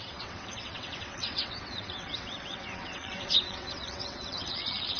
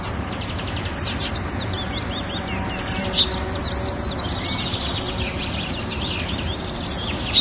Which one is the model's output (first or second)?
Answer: first